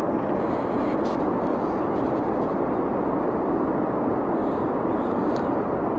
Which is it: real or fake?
real